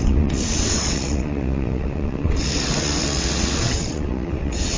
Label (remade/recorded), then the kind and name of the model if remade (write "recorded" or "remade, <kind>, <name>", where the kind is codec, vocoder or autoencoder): remade, vocoder, WaveNeXt